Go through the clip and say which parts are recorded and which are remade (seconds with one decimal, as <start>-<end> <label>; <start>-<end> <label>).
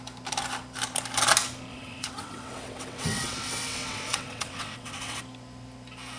0.0-1.7 recorded; 1.7-5.2 remade; 5.2-6.2 recorded